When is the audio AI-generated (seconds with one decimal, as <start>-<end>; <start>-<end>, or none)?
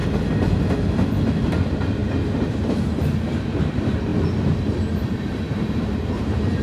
1.3-6.6